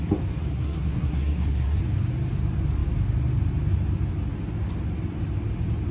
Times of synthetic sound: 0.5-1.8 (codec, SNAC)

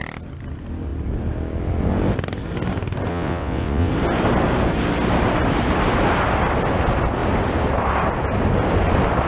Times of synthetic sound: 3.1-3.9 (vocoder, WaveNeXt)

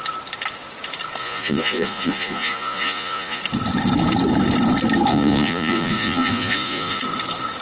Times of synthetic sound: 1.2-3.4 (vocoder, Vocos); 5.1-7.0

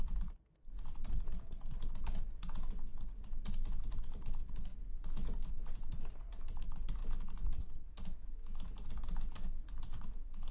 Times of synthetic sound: none